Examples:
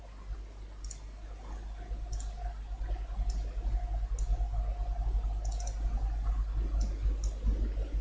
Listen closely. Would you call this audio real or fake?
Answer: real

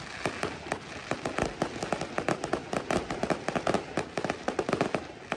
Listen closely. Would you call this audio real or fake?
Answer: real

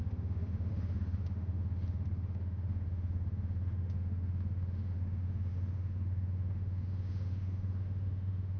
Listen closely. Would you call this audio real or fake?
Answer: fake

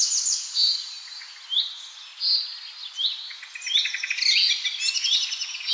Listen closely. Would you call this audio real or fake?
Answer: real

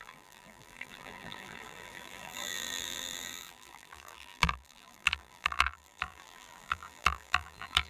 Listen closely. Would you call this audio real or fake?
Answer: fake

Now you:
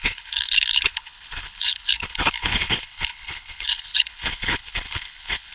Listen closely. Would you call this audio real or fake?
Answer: fake